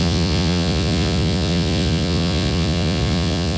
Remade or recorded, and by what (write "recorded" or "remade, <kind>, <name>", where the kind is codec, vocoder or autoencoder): remade, vocoder, Vocos